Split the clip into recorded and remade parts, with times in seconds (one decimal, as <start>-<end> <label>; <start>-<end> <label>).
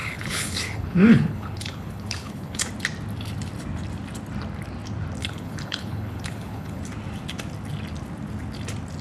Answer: 0.0-2.7 remade; 2.7-5.2 recorded; 5.2-6.8 remade; 6.8-9.0 recorded